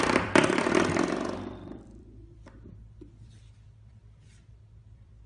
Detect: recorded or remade remade